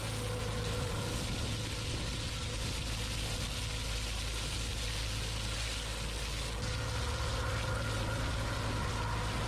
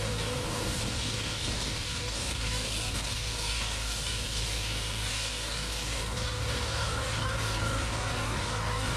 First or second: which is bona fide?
first